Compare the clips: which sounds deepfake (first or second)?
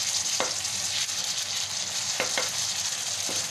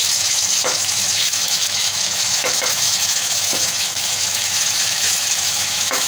second